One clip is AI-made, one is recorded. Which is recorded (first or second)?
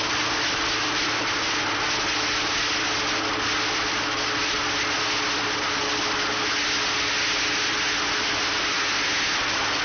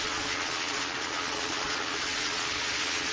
first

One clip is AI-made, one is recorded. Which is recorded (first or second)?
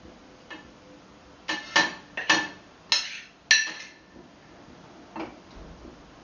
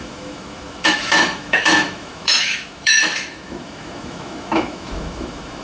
first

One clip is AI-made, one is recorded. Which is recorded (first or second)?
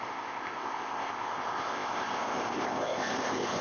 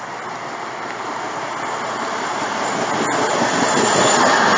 second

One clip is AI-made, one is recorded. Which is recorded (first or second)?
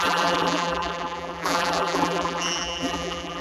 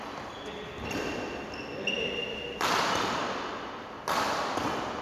second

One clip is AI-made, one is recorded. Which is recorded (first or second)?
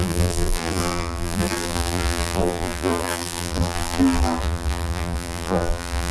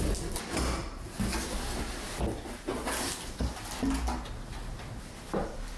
second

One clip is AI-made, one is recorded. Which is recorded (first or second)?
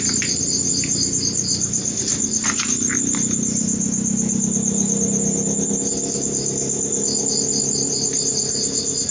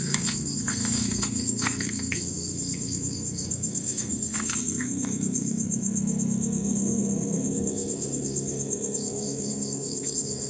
first